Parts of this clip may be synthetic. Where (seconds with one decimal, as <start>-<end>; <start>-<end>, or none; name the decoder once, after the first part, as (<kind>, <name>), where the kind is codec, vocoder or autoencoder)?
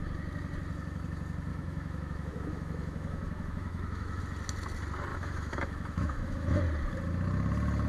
1.5-4.2 (autoencoder, DAC-VAE); 5.1-6.6